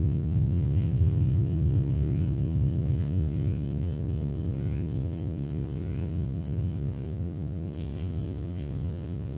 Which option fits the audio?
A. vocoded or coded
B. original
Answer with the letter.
A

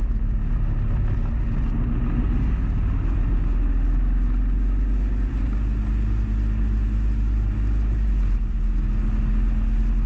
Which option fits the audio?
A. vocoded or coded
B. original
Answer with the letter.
B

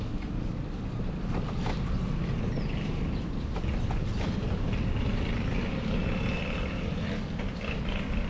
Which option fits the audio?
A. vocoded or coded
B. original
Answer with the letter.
B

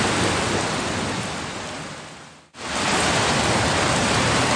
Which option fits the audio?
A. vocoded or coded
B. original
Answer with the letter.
B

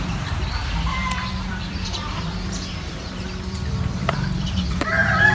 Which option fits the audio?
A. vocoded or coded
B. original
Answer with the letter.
A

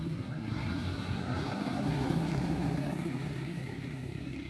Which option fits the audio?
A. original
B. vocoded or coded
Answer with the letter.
B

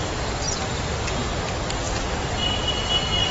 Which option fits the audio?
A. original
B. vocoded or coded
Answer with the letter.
A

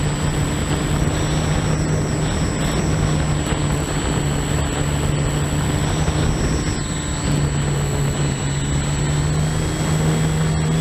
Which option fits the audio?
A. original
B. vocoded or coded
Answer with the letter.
A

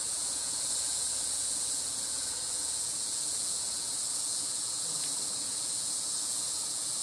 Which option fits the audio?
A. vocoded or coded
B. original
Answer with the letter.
A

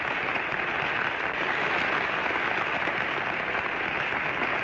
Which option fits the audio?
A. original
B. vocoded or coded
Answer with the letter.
A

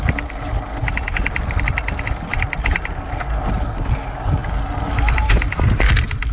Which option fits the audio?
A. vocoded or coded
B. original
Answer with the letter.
B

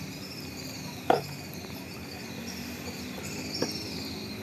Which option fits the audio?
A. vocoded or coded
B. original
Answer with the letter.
B